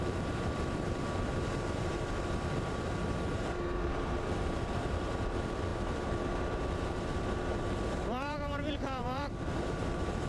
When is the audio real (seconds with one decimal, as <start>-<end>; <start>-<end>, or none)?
none